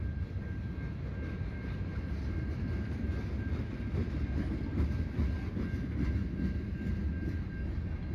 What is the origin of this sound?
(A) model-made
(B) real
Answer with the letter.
B